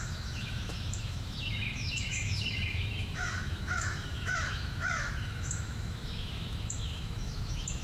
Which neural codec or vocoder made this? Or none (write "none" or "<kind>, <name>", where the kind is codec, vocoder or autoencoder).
autoencoder, DAC-VAE